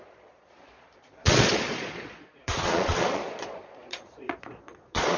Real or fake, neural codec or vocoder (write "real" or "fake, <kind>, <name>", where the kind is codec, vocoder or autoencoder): fake, vocoder, Vocos